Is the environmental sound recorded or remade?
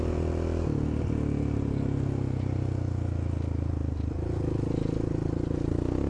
recorded